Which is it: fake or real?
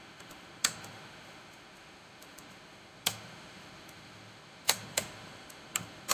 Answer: fake